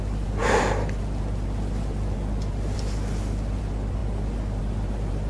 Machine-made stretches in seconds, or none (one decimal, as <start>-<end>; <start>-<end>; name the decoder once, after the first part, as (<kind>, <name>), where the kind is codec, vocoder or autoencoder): none